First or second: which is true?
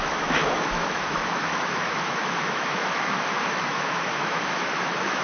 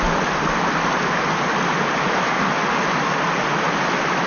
second